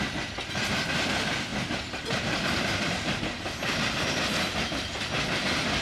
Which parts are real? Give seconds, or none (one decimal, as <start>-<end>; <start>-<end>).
0.0-1.5; 4.2-5.8